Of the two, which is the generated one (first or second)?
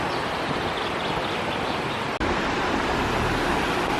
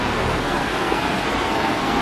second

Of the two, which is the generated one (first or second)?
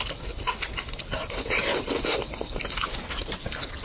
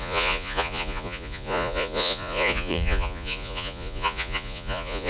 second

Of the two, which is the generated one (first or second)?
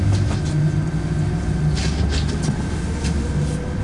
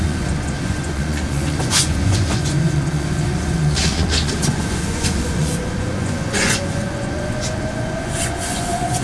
second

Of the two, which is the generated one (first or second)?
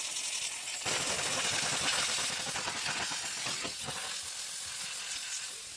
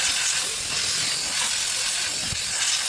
second